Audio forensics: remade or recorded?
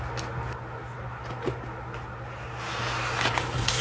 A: recorded